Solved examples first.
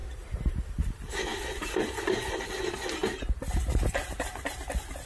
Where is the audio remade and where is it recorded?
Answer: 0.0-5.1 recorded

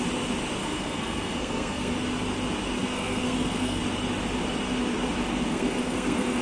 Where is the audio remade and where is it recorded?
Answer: 0.0-0.6 recorded; 0.6-1.9 remade; 1.9-2.8 recorded; 2.8-3.8 remade; 3.8-5.5 recorded; 5.5-6.4 remade

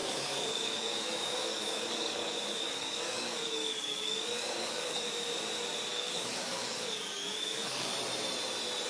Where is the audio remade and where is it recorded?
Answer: 0.0-5.1 remade; 5.1-5.9 recorded; 5.9-7.9 remade; 7.9-8.9 recorded

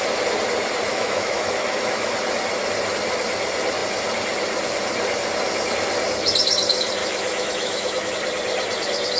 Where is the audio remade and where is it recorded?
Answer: 0.0-0.9 recorded; 0.9-2.1 remade; 2.1-7.0 recorded; 7.0-8.1 remade; 8.1-9.2 recorded

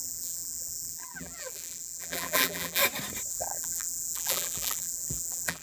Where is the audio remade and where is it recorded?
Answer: 0.0-2.8 remade; 2.8-3.3 recorded; 3.3-5.6 remade

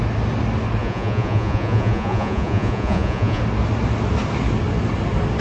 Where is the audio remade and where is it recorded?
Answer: 0.0-0.8 recorded; 0.8-3.4 remade; 3.4-5.4 recorded

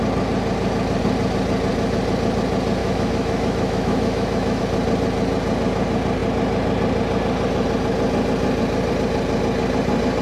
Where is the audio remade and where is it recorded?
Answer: 0.0-2.8 recorded; 2.8-4.6 remade; 4.6-10.2 recorded